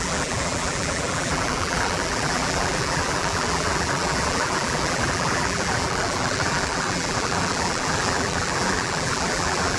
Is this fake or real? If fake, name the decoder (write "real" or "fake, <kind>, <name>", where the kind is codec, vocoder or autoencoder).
fake, vocoder, BigVGAN v2